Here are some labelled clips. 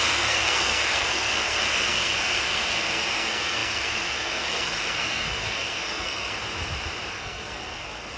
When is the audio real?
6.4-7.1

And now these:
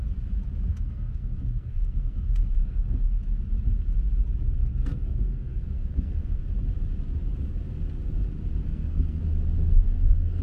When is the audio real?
0.0-0.7; 3.2-4.6; 6.4-8.6; 9.2-9.6

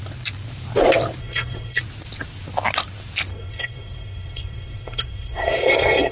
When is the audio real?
0.0-1.2; 1.8-3.3

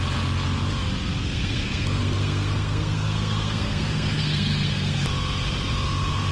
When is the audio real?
0.0-1.2; 5.0-6.3

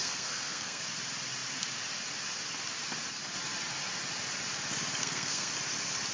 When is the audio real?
0.8-5.0; 5.5-6.1

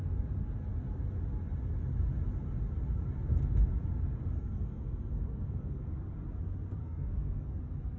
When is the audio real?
0.0-4.4; 6.0-6.8; 7.6-8.0

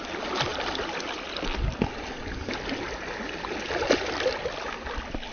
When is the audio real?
0.0-5.3

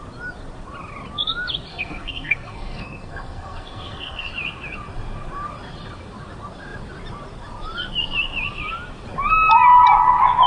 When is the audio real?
0.0-1.7; 4.3-10.5